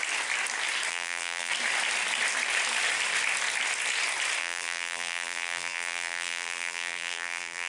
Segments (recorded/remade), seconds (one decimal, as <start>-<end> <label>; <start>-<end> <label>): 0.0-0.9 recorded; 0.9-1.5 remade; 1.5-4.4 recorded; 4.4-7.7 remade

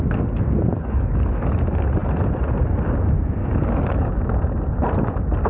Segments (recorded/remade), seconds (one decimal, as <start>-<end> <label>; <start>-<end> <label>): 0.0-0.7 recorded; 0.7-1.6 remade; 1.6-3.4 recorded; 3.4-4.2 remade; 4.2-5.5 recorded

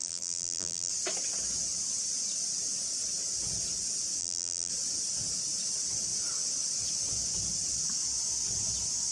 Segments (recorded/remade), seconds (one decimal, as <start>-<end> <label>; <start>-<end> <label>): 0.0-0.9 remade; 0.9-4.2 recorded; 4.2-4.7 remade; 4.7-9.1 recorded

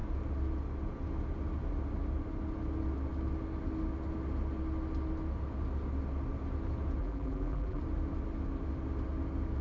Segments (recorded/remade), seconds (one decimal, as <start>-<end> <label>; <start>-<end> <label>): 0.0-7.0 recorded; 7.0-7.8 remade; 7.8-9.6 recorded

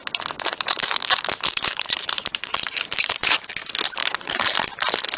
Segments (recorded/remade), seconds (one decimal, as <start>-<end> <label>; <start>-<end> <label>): 0.0-0.5 recorded; 0.5-3.5 remade; 3.5-4.0 recorded; 4.0-4.6 remade; 4.6-5.2 recorded

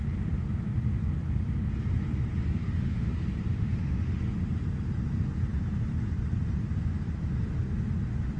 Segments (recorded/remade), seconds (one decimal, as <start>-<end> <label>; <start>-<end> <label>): 0.0-2.6 recorded; 2.6-3.1 remade; 3.1-3.5 recorded; 3.5-4.2 remade; 4.2-8.4 recorded